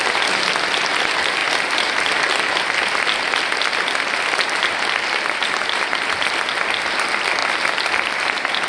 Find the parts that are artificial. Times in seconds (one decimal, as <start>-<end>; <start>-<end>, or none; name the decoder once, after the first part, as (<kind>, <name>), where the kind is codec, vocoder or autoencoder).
none